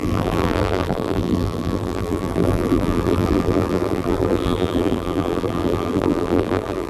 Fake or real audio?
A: fake